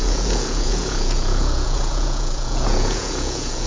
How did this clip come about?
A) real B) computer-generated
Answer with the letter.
B